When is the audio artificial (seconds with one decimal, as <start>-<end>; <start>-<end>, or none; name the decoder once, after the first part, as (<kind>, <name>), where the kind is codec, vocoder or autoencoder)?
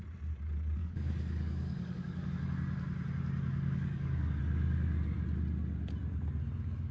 0.8-2.3 (codec, DAC); 3.5-4.4